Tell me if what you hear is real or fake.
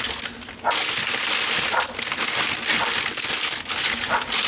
real